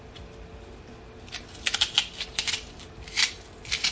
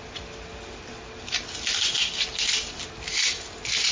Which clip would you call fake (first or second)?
first